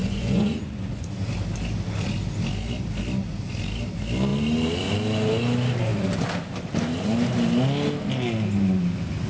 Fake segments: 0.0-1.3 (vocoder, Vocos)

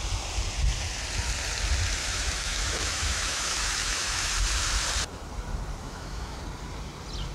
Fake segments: 2.0-4.3 (autoencoder, DAC-VAE); 5.8-6.4

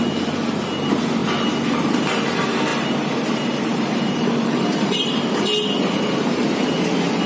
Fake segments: 2.7-5.4 (vocoder, BigVGAN v2)

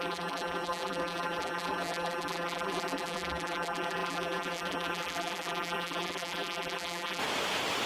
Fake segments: 0.0-7.2 (vocoder, BigVGAN v2)

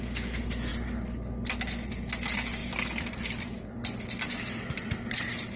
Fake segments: none

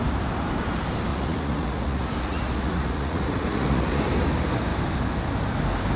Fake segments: 1.1-4.0 (vocoder, Vocos)

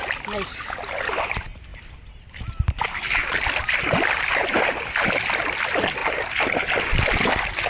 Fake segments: none